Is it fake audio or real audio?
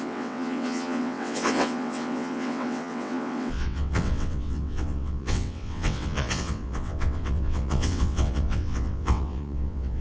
fake